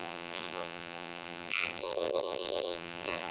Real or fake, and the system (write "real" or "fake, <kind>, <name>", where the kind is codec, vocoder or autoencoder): fake, vocoder, BigVGAN v2